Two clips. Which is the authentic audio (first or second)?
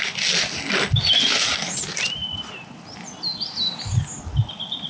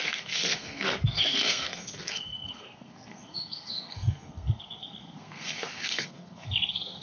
first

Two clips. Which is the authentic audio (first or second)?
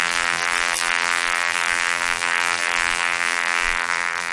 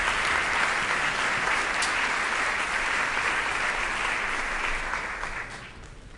second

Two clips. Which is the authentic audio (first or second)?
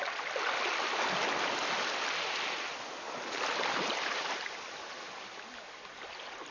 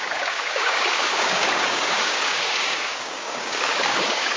first